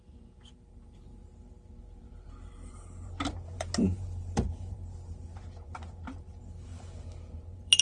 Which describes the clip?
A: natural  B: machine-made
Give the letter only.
B